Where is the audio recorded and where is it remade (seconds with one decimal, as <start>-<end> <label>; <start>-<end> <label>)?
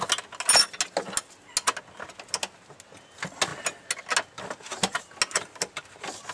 0.0-6.3 recorded